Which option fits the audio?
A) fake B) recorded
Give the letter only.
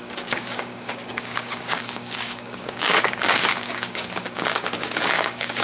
A